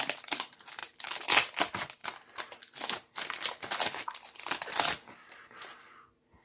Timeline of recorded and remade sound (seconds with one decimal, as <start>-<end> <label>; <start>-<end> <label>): 0.0-6.4 recorded